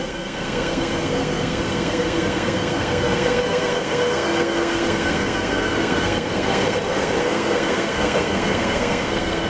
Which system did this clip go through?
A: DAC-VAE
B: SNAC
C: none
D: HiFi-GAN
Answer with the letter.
B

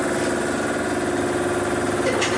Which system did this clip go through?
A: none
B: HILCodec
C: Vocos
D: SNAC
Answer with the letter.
A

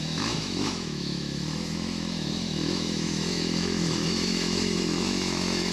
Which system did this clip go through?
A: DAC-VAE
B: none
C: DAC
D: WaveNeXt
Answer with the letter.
A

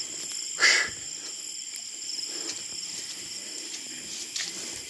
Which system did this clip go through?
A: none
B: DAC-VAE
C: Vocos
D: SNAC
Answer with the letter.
A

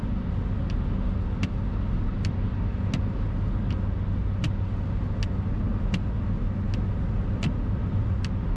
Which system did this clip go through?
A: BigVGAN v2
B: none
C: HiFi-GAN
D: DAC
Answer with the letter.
B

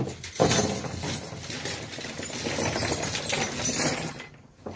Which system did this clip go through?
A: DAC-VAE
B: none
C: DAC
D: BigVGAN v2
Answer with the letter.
B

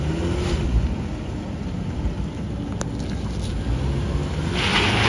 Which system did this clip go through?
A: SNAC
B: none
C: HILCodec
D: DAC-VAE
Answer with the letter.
B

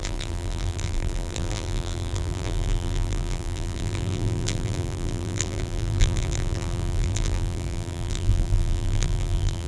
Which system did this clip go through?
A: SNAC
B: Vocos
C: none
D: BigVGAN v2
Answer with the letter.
D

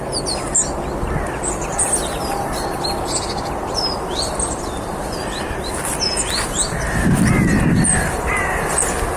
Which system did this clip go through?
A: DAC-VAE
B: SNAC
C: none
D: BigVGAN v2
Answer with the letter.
C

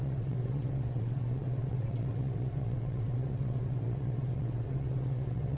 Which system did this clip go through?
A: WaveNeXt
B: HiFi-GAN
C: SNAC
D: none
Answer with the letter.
A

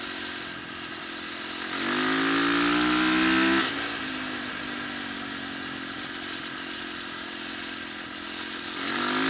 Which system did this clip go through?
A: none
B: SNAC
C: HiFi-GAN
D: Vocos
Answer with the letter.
A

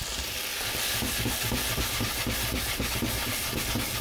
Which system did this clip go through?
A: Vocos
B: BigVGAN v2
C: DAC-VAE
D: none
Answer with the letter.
D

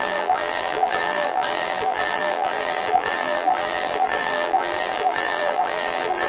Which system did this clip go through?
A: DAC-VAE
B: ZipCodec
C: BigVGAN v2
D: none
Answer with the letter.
C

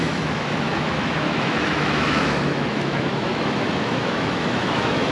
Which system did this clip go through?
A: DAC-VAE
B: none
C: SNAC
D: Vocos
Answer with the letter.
A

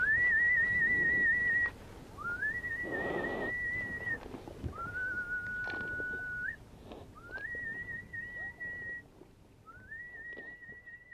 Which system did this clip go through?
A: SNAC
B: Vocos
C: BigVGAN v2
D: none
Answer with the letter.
D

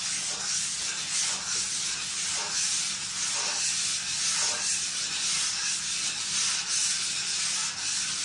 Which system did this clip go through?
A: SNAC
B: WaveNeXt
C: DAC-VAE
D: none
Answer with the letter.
D